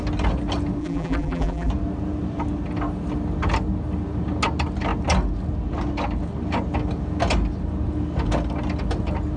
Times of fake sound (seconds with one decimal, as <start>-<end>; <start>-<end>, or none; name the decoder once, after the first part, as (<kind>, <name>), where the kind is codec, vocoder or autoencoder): 0.8-1.7 (vocoder, BigVGAN v2)